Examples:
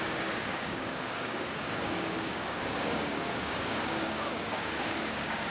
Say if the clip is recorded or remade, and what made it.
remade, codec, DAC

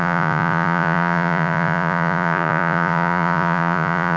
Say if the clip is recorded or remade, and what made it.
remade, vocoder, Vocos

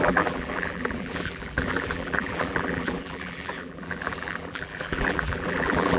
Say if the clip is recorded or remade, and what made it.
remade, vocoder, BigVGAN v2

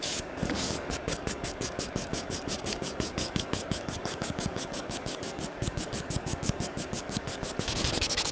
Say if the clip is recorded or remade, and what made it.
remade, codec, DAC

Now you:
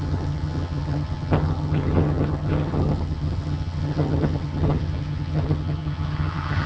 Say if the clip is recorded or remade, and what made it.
remade, vocoder, HiFi-GAN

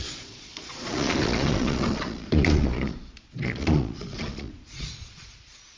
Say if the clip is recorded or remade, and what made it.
remade, vocoder, Vocos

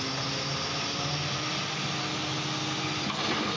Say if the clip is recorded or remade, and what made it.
recorded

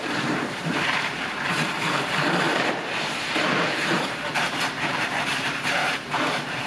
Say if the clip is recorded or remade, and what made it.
remade, vocoder, BigVGAN v2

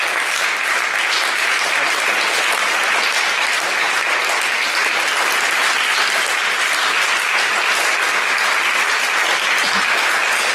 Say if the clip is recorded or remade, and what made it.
recorded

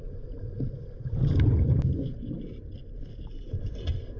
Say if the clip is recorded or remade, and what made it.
recorded